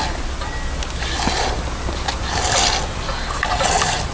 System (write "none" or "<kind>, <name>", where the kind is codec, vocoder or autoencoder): none